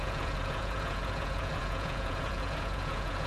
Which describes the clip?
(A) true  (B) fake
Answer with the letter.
B